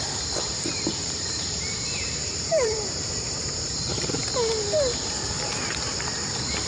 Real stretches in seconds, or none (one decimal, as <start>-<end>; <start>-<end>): 4.2-5.7